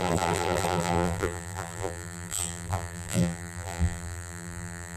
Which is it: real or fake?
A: fake